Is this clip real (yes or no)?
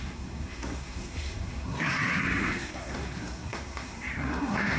no